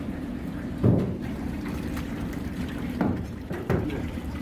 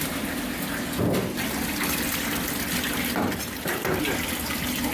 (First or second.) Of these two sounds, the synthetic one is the first